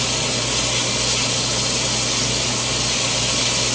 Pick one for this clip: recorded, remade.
recorded